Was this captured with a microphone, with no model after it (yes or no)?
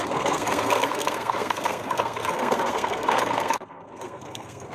no